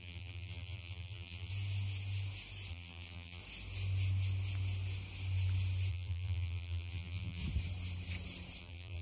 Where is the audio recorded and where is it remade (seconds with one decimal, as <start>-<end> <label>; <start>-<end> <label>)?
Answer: 0.0-1.5 remade; 1.5-2.7 recorded; 2.7-3.4 remade; 3.4-5.9 recorded; 5.9-7.4 remade; 7.4-8.6 recorded; 8.6-9.0 remade